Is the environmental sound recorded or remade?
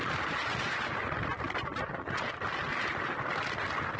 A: recorded